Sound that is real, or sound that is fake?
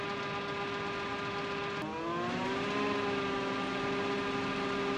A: real